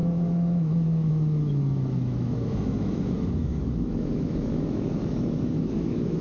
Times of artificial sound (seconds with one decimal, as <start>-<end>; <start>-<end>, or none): 0.0-6.2